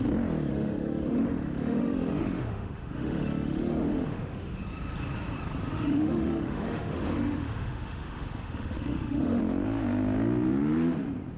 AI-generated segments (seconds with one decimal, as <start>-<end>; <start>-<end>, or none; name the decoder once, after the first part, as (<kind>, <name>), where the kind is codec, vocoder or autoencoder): 0.5-4.6 (autoencoder, DAC-VAE); 5.7-9.4